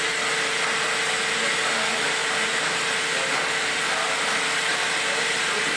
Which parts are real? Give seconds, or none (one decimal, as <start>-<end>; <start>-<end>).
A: 0.0-5.8